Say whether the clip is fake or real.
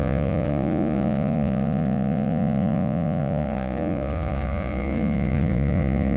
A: fake